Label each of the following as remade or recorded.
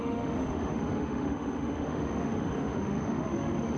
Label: remade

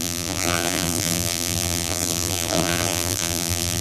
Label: remade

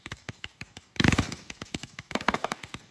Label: remade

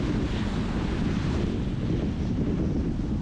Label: recorded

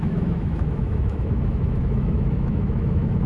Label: remade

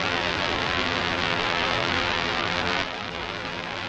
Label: remade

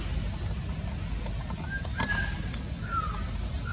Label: recorded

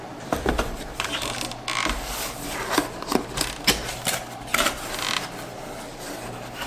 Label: recorded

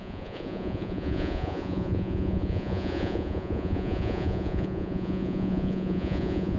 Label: remade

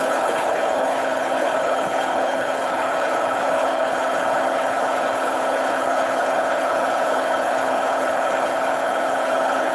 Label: remade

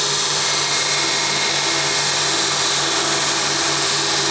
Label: recorded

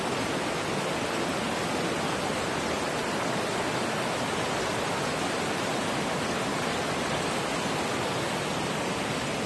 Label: recorded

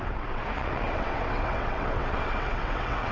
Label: remade